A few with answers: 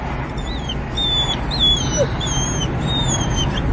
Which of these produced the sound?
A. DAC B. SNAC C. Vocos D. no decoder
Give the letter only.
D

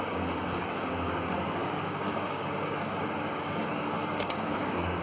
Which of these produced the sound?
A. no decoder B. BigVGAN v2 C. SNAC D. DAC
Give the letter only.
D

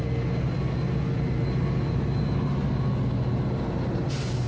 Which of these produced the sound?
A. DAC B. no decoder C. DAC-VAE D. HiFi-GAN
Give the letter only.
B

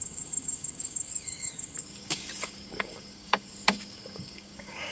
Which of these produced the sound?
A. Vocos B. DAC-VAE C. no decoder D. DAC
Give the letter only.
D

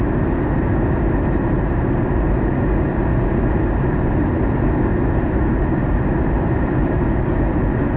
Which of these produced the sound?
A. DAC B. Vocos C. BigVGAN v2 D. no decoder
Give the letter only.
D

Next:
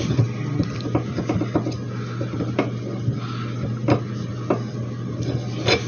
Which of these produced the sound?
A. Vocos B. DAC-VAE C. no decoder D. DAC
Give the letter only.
C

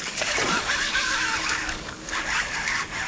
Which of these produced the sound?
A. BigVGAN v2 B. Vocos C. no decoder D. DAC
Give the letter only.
D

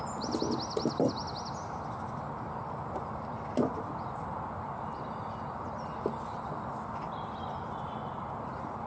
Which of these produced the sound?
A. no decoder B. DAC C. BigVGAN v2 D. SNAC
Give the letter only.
A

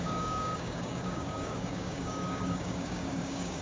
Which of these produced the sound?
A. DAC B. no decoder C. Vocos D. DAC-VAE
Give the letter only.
A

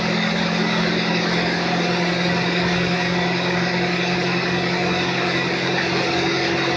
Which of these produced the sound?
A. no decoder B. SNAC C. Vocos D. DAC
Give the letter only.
D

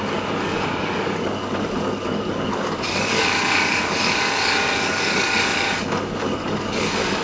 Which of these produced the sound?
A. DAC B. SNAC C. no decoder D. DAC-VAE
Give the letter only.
A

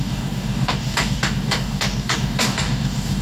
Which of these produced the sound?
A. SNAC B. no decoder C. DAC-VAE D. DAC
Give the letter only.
D